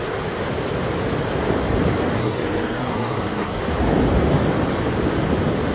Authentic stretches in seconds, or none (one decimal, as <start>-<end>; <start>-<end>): 0.0-2.2; 3.6-5.7